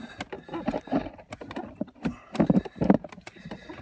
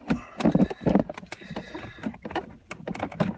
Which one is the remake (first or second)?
first